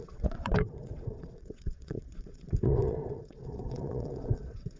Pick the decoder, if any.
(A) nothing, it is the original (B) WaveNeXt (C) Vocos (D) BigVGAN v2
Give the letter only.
B